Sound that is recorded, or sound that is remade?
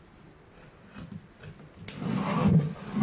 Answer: recorded